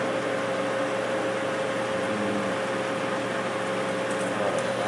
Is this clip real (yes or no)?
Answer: yes